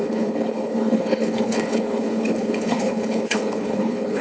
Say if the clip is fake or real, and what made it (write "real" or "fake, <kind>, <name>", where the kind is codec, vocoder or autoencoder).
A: fake, codec, HILCodec